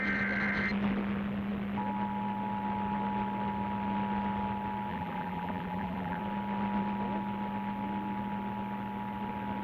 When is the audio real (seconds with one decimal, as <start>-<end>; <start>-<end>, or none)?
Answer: 0.0-4.9; 6.2-9.6